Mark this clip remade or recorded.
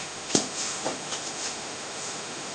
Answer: remade